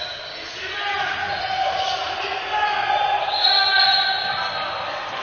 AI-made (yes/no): no